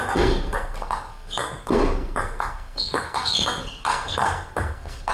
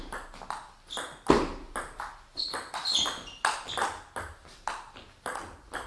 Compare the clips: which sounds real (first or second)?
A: second